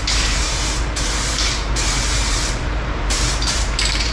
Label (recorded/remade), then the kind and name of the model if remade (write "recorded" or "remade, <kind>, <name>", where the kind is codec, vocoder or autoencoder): remade, vocoder, BigVGAN v2